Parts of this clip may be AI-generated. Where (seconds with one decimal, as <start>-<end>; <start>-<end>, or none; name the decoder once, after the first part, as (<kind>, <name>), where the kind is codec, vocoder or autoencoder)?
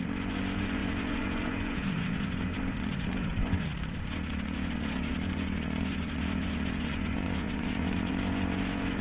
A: 0.0-9.0 (vocoder, Vocos)